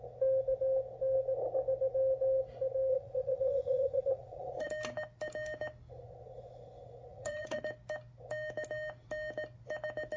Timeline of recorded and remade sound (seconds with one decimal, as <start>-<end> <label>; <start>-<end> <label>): 0.0-2.9 recorded; 2.9-4.7 remade; 4.7-7.1 recorded; 7.1-7.6 remade; 7.6-10.2 recorded